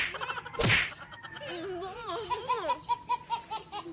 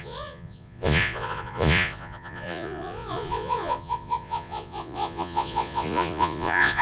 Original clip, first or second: first